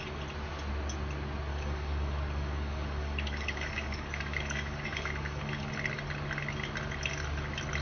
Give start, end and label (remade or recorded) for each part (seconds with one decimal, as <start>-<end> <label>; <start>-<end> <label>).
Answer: 0.0-1.5 recorded; 1.5-5.6 remade; 5.6-7.8 recorded